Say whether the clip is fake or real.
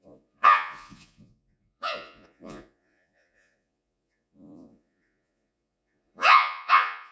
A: fake